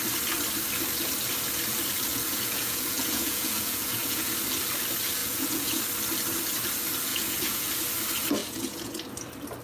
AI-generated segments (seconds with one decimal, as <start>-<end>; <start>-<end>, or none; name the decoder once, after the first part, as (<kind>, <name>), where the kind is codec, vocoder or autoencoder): 2.1-4.3 (vocoder, Vocos); 5.2-5.8; 7.1-7.7; 8.4-9.0

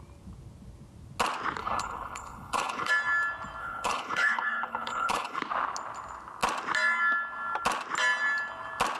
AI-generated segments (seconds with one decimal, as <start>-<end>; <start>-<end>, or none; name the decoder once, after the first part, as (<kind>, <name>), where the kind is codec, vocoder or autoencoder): 1.6-2.9 (codec, HILCodec); 3.6-5.4

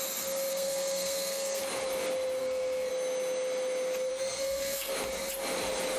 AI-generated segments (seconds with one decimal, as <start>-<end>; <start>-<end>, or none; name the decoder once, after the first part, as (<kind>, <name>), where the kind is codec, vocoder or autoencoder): 0.5-1.6 (codec, SNAC); 2.4-2.9; 4.1-4.9

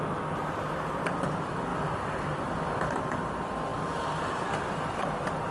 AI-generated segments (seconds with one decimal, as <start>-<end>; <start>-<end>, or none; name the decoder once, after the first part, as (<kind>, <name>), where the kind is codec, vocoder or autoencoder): none

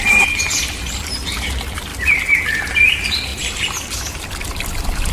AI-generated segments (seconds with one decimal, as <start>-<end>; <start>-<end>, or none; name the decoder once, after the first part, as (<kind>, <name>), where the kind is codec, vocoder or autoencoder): none